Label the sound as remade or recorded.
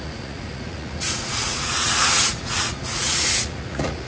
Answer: remade